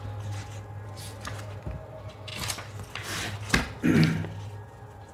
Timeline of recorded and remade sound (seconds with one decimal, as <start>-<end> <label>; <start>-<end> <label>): 0.0-5.1 recorded